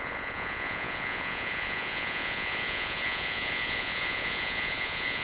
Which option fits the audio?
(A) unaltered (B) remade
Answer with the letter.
B